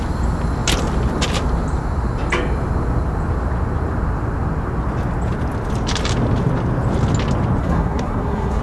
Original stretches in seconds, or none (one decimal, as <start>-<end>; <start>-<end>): 0.0-7.6